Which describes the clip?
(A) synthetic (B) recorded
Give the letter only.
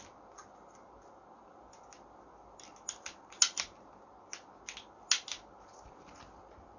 B